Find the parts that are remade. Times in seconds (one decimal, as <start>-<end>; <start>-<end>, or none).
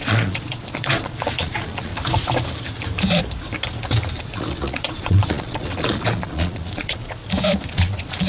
0.0-1.9; 4.2-7.2; 7.7-8.3